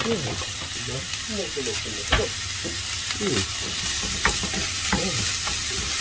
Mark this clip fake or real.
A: real